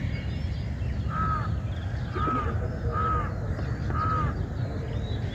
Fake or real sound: real